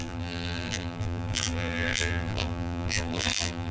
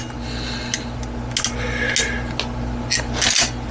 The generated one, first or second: first